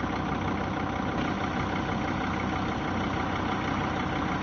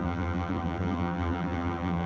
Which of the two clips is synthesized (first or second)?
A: second